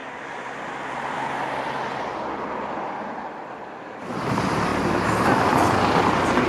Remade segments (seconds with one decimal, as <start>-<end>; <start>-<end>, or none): none